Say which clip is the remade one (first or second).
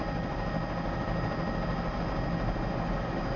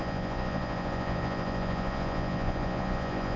second